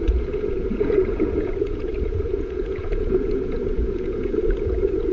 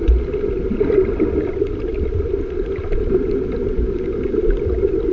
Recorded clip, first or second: second